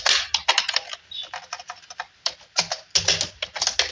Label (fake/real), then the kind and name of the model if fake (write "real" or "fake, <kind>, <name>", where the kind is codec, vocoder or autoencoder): real